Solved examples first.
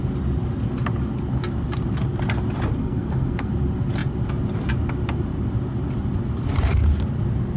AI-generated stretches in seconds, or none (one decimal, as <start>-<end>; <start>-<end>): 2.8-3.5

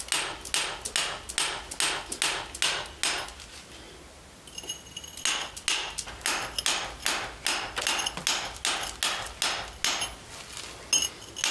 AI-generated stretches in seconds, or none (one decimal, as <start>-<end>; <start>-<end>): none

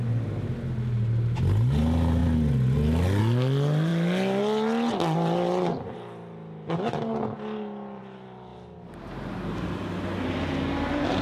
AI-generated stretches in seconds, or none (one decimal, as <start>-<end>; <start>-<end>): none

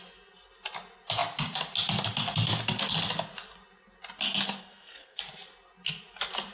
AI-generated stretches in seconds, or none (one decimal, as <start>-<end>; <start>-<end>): 4.6-5.2

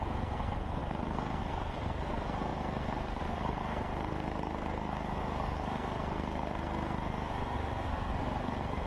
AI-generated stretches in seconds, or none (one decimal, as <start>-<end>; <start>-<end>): 0.0-8.9